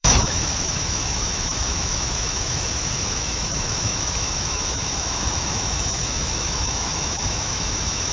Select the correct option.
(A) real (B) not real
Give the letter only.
B